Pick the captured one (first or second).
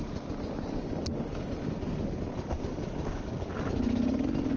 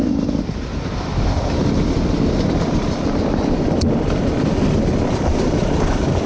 first